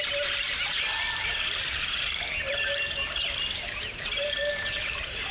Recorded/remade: remade